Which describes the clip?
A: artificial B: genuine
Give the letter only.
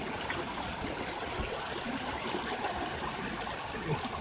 B